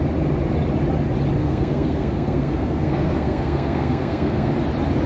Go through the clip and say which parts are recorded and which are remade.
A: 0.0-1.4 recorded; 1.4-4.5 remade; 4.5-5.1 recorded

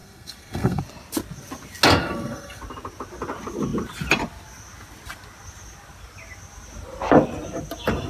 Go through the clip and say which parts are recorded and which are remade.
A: 0.0-0.8 remade; 0.8-2.0 recorded; 2.0-2.6 remade; 2.6-8.1 recorded

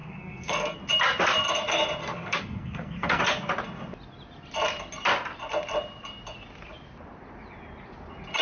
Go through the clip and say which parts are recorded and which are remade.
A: 0.0-0.8 remade; 0.8-2.0 recorded; 2.0-3.2 remade; 3.2-8.4 recorded

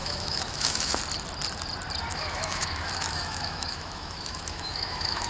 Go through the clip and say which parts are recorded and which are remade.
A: 0.0-1.0 remade; 1.0-2.1 recorded; 2.1-5.3 remade

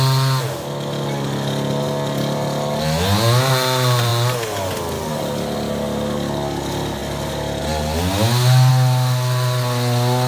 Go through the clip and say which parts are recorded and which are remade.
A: 0.0-10.3 recorded

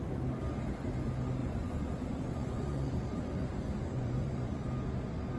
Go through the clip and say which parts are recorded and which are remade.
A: 0.0-1.4 recorded; 1.4-4.6 remade; 4.6-5.4 recorded

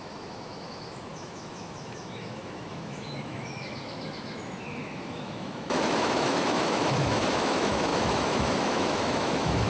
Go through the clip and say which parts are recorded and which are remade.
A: 0.0-9.7 remade

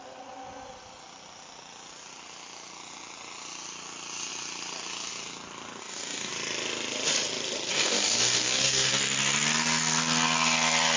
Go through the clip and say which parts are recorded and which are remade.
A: 0.0-5.8 recorded; 5.8-6.3 remade; 6.3-7.7 recorded; 7.7-8.9 remade; 8.9-11.0 recorded